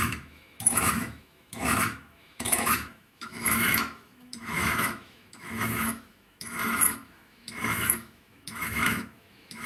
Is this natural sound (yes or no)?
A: no